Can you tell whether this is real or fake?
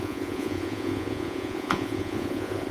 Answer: fake